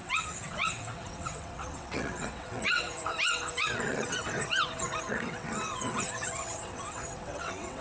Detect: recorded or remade remade